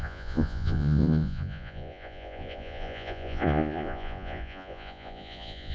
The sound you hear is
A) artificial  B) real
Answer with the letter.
A